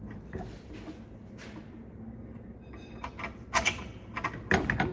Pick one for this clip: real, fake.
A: real